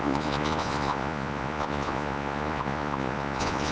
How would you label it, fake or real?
fake